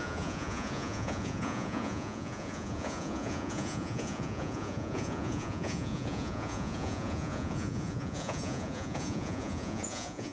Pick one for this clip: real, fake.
fake